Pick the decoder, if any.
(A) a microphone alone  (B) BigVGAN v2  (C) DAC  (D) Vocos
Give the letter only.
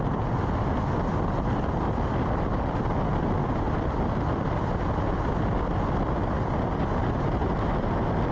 A